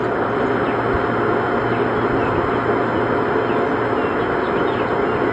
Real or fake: real